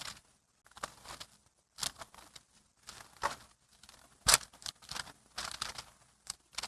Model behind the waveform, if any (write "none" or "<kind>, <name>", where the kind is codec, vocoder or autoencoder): none